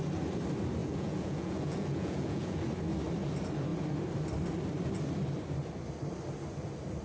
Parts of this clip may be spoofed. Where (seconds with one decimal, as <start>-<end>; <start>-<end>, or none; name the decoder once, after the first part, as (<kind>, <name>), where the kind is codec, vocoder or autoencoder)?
0.8-2.6 (vocoder, Vocos)